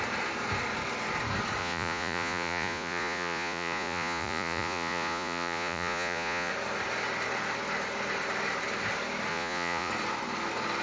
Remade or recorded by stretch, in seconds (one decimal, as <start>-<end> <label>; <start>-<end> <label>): 0.0-1.6 recorded; 1.6-6.5 remade; 6.5-9.3 recorded; 9.3-9.9 remade; 9.9-10.8 recorded